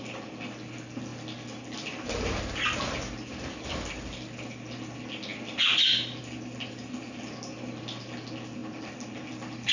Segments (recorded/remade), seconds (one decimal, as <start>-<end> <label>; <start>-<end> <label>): 0.0-9.7 recorded